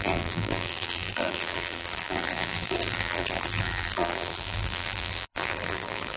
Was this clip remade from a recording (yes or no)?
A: yes